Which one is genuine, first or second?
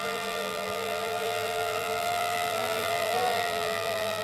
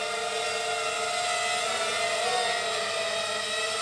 second